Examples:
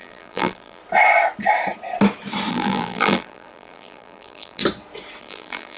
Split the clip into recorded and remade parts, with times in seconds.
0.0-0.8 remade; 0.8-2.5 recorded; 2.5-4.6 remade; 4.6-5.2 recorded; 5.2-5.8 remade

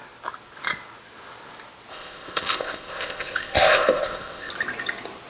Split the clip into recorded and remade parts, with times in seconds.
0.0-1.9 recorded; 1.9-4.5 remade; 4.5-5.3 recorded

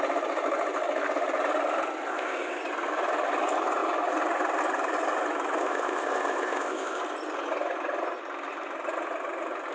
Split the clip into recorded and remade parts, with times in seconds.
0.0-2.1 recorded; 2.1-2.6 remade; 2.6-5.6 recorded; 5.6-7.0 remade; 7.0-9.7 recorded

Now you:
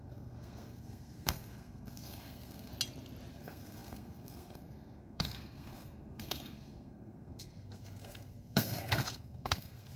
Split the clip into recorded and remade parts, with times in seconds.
0.0-2.7 remade; 2.7-3.3 recorded; 3.3-10.0 remade

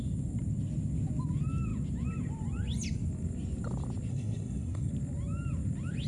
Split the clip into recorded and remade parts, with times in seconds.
0.0-4.1 recorded; 4.1-4.9 remade; 4.9-6.1 recorded